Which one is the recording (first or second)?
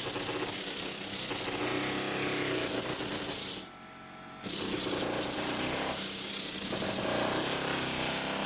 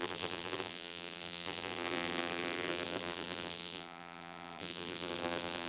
first